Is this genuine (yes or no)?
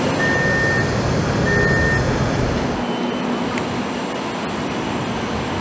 yes